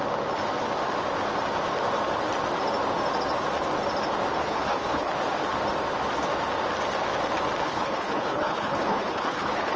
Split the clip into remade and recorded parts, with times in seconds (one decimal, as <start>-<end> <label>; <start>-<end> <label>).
0.0-4.4 recorded; 4.4-5.1 remade; 5.1-7.6 recorded; 7.6-9.8 remade